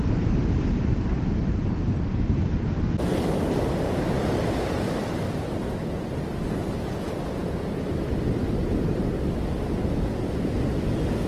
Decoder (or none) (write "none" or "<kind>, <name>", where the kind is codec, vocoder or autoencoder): none